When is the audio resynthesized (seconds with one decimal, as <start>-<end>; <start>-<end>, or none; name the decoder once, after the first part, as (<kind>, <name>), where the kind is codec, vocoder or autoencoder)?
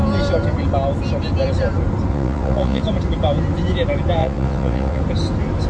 2.1-2.8 (vocoder, WaveNeXt); 4.2-5.0